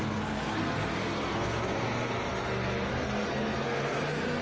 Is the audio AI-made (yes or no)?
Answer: yes